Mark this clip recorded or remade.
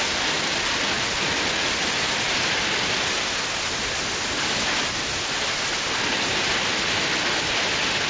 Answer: recorded